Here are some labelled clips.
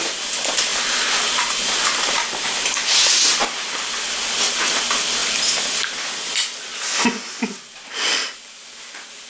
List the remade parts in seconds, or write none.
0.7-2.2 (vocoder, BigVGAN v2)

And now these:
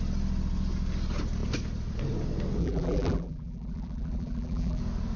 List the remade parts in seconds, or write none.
2.6-4.8 (vocoder, BigVGAN v2)

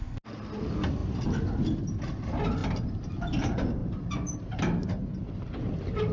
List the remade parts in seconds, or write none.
none

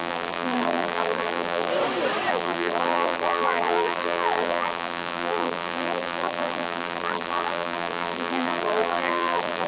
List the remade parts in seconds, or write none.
0.0-1.7 (vocoder, BigVGAN v2); 2.3-9.7

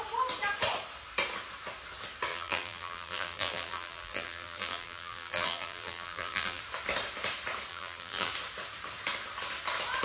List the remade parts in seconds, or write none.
2.3-6.6 (vocoder, BigVGAN v2); 7.7-8.3